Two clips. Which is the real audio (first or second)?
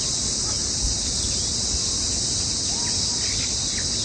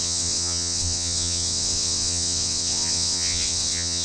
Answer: first